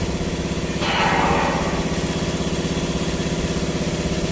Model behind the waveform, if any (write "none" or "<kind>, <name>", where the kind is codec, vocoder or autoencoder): none